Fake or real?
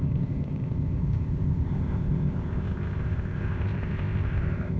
fake